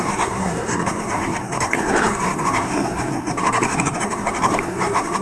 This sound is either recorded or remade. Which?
remade